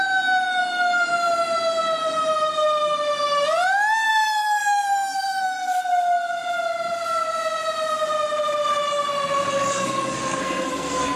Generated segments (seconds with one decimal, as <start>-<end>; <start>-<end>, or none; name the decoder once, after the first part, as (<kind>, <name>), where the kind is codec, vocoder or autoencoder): 4.1-5.8 (codec, SNAC); 9.7-11.2